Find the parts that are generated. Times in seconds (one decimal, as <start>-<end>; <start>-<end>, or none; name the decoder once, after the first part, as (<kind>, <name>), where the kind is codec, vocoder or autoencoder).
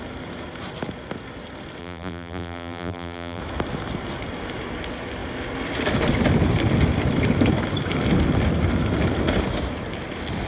1.8-3.4 (vocoder, BigVGAN v2)